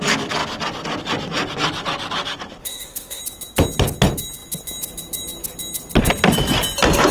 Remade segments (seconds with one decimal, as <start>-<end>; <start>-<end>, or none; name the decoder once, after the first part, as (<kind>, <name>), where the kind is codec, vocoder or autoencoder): 2.6-3.2 (autoencoder, DAC-VAE)